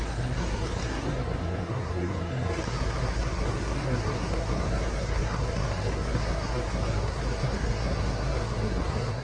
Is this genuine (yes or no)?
no